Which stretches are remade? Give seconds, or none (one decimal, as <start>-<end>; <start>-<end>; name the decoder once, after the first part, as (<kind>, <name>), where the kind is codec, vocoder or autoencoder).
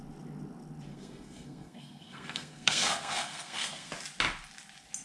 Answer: 0.9-3.9 (codec, SNAC)